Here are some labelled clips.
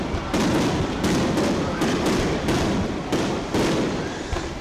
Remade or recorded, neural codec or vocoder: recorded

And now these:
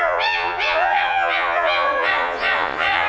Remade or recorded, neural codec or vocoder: remade, vocoder, Vocos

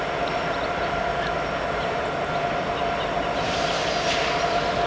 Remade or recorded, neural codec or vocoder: recorded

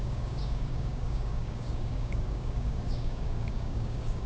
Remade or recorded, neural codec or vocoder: remade, codec, DAC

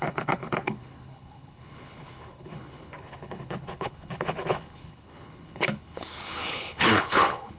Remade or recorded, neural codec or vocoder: remade, codec, HILCodec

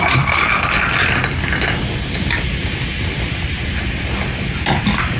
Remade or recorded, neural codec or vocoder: recorded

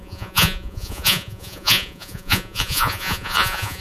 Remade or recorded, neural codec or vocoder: remade, vocoder, Vocos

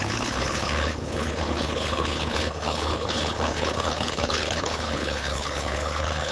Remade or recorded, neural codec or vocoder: remade, codec, HILCodec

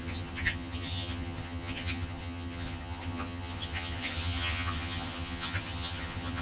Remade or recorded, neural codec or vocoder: remade, vocoder, HiFi-GAN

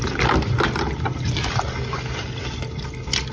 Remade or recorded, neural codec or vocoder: recorded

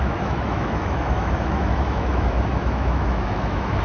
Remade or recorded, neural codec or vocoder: remade, autoencoder, DAC-VAE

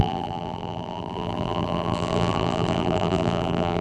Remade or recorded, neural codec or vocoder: remade, vocoder, BigVGAN v2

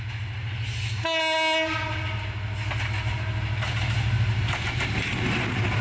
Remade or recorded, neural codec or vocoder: recorded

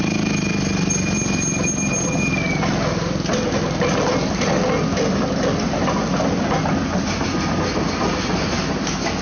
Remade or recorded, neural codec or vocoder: recorded